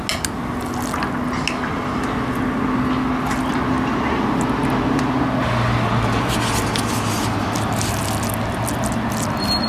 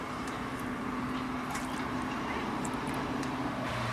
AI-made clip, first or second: second